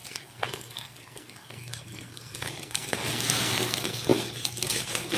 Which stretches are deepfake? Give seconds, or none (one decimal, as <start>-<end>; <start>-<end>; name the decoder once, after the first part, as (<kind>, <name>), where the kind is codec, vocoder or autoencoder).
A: 0.0-5.2 (codec, SNAC)